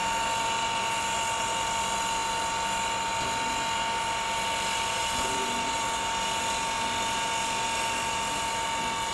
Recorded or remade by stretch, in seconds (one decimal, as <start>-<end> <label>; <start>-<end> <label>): 0.0-9.1 recorded